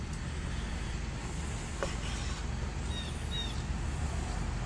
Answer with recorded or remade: recorded